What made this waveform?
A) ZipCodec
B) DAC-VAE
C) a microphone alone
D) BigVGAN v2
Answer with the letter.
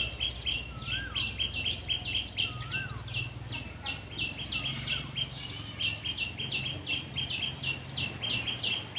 C